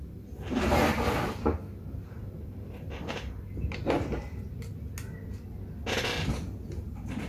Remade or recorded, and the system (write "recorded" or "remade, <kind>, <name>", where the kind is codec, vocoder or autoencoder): recorded